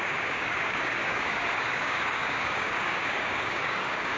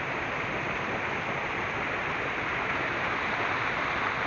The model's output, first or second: first